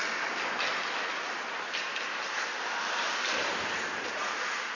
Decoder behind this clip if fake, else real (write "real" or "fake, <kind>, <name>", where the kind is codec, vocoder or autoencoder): real